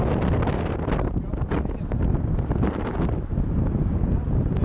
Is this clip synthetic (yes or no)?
no